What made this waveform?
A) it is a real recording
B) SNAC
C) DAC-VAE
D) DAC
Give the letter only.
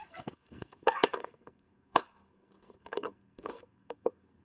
B